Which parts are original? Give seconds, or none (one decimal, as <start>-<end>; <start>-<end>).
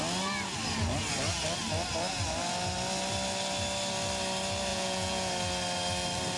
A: 0.0-4.7; 5.3-6.4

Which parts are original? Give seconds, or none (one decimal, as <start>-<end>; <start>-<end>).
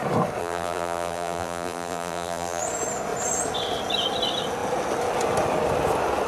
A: 0.0-0.4; 2.6-6.3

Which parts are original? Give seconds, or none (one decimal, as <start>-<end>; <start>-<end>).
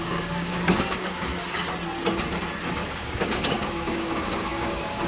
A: 1.3-2.9